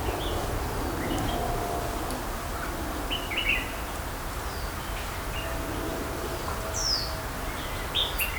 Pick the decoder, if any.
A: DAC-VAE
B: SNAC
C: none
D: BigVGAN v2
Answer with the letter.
C